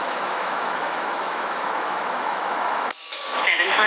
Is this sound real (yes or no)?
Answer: no